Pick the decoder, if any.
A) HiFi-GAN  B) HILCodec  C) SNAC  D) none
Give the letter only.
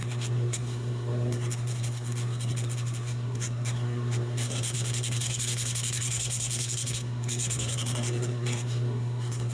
C